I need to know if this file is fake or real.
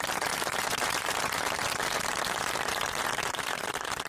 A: fake